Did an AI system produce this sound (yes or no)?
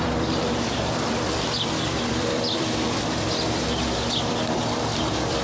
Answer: yes